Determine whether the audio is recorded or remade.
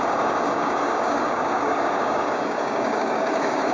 remade